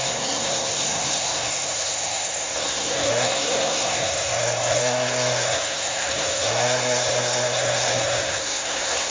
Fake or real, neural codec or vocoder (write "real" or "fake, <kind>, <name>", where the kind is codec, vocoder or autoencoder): fake, codec, SNAC